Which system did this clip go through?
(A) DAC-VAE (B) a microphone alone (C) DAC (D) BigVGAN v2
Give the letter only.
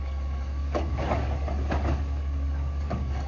C